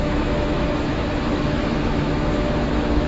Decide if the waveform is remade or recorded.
remade